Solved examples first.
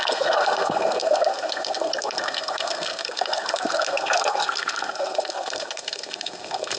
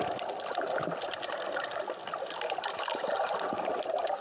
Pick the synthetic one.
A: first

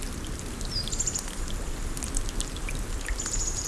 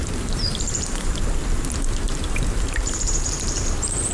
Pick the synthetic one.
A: second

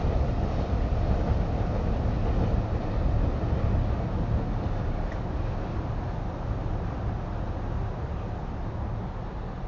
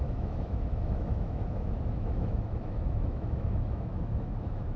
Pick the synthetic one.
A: second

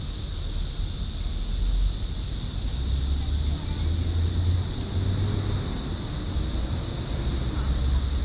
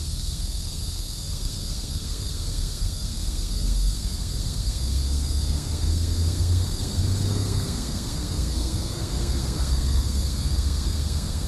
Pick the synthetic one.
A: second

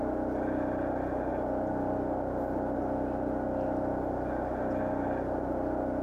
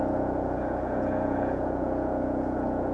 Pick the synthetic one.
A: second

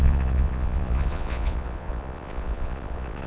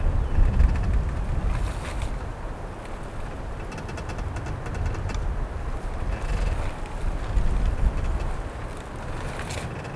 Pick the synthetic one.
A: first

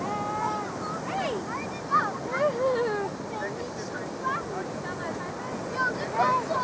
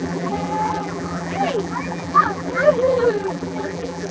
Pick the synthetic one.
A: second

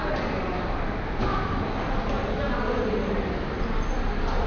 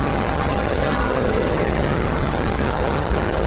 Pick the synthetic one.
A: second